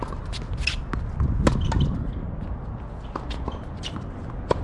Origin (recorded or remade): recorded